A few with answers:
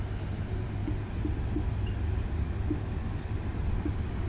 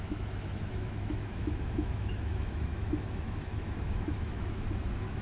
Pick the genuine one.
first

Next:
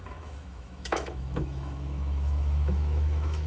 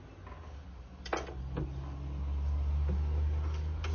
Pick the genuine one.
second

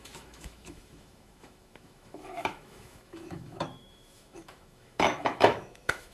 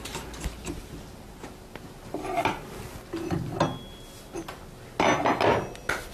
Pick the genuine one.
second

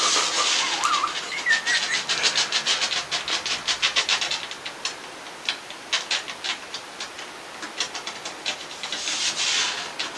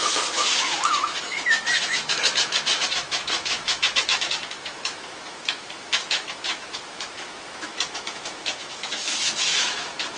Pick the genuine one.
first